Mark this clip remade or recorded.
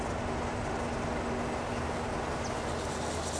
recorded